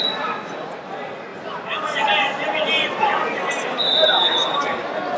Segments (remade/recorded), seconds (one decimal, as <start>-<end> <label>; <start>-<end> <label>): 0.0-5.2 recorded